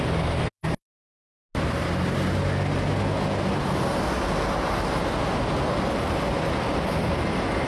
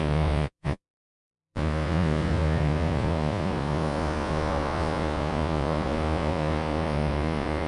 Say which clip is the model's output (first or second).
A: second